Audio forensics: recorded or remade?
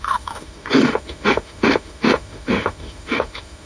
remade